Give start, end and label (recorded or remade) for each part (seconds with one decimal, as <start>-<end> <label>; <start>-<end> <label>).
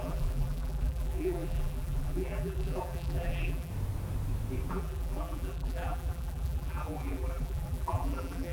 0.0-3.7 remade; 3.7-4.7 recorded; 4.7-8.5 remade